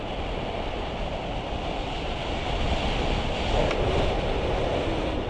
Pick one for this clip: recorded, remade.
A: recorded